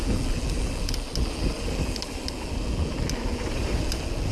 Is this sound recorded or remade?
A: recorded